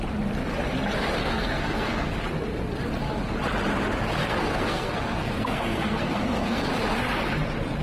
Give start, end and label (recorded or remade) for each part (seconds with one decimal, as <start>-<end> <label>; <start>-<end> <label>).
0.0-1.2 recorded; 1.2-2.1 remade; 2.1-4.2 recorded; 4.2-6.7 remade; 6.7-7.8 recorded